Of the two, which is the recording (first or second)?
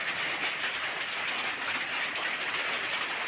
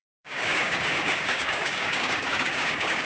first